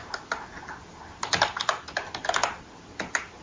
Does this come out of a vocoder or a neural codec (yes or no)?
no